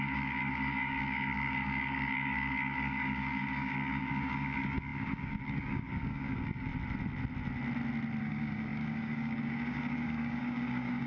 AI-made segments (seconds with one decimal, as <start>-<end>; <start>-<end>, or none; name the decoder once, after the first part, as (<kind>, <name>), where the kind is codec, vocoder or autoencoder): 0.0-6.7 (codec, DAC); 8.2-11.1